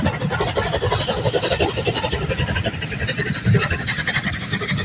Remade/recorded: recorded